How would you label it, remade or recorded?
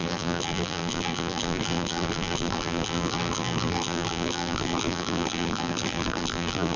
remade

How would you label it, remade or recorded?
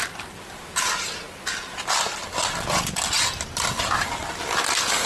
recorded